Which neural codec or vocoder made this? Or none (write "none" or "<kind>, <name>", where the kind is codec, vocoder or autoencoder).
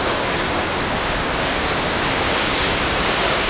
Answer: codec, DAC